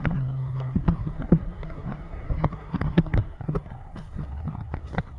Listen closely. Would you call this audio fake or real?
fake